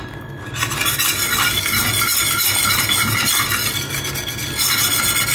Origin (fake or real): real